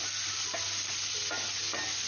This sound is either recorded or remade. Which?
recorded